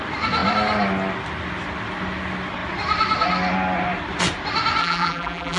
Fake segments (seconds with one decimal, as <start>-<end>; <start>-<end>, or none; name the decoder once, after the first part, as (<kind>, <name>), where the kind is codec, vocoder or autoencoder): 4.8-5.6 (vocoder, BigVGAN v2)